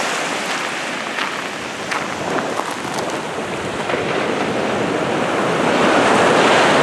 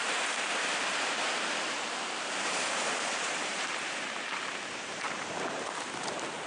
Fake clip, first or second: second